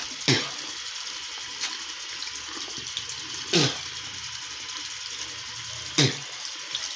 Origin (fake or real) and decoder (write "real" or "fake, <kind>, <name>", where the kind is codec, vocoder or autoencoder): real